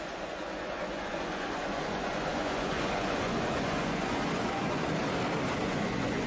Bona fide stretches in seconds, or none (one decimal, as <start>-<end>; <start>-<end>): 5.0-5.6

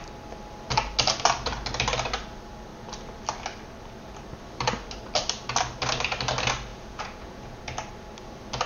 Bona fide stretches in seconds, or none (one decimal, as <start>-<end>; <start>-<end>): 0.0-6.7; 7.6-8.7

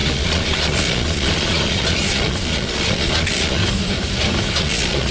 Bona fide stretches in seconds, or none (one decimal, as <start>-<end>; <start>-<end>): 3.6-4.6

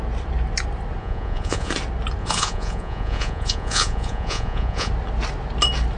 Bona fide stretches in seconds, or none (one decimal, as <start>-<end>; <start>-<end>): 0.0-1.0; 1.7-2.2; 4.9-6.0

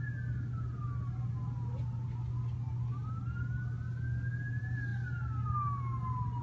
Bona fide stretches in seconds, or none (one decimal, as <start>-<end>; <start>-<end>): 0.0-6.4

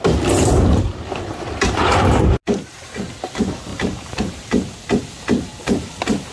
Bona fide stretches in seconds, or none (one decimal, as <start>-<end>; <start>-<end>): 0.0-3.7; 4.5-6.3

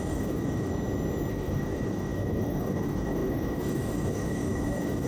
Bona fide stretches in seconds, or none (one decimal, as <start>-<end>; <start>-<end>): 0.7-1.3

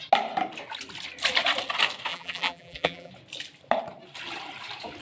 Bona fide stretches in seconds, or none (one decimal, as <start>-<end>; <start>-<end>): 0.0-2.1; 3.1-5.0